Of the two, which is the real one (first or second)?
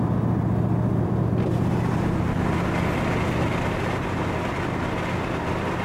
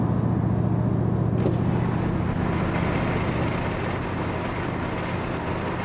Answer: second